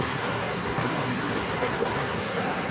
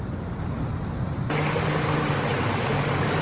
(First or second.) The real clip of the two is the second